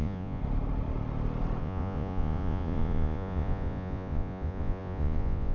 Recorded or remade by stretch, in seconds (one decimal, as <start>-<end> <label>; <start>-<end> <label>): 0.0-0.4 remade; 0.4-1.6 recorded; 1.6-5.5 remade